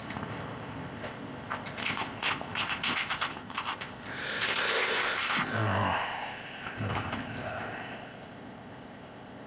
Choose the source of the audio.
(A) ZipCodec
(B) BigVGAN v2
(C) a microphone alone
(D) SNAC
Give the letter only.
A